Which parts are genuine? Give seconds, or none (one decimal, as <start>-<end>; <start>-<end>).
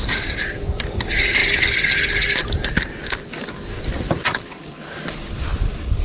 0.0-6.0